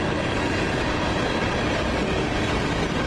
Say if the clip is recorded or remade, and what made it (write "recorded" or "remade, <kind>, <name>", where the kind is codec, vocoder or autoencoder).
recorded